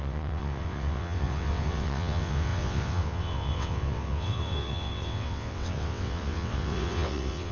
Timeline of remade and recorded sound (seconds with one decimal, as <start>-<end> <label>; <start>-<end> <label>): 0.0-7.5 remade